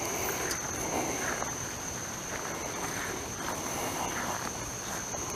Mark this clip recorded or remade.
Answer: recorded